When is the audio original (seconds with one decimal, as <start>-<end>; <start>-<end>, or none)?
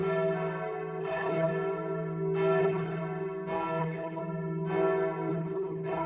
0.0-1.0; 1.5-2.6; 3.0-3.8; 4.2-5.3